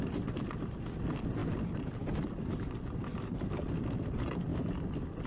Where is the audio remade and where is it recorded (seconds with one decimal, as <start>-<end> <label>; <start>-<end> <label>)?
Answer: 0.0-4.5 recorded; 4.5-5.3 remade